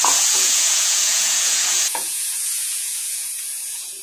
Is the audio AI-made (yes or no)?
yes